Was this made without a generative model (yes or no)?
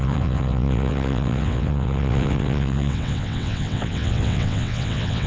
no